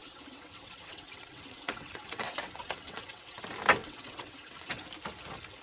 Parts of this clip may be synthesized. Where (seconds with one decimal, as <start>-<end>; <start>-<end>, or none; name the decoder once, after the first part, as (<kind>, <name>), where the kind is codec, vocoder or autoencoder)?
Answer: 0.0-3.4 (vocoder, WaveNeXt); 3.8-4.8